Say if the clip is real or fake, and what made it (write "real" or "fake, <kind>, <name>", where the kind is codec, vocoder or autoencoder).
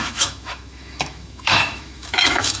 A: fake, autoencoder, DAC-VAE